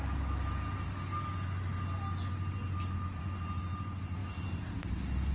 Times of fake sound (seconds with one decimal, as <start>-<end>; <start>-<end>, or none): none